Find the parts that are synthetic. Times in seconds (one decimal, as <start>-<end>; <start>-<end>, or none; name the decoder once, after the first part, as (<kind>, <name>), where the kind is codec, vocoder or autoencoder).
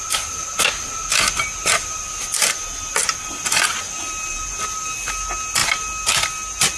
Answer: none